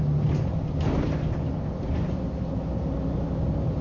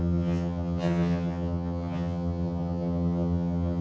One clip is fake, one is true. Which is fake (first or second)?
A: second